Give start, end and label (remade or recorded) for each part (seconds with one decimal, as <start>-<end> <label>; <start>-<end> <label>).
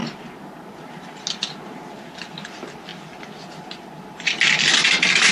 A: 0.0-2.0 recorded; 2.0-5.3 remade